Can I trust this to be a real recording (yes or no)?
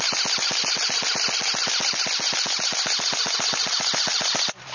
no